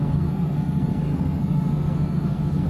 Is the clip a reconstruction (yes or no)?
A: yes